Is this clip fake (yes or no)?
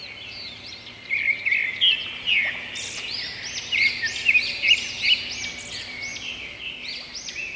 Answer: no